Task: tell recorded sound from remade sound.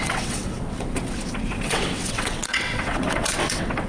remade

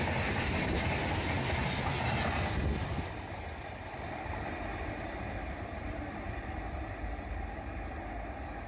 recorded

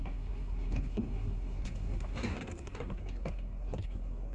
remade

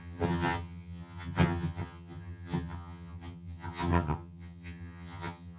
remade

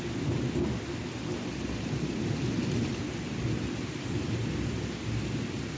recorded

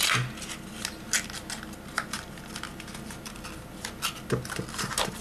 recorded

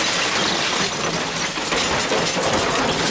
recorded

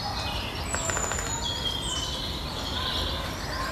recorded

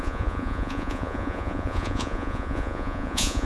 remade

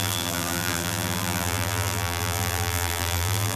remade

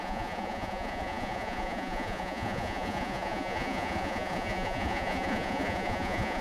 remade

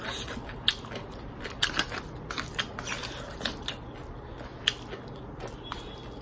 recorded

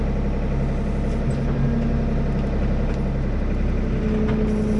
recorded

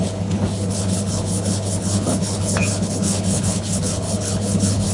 remade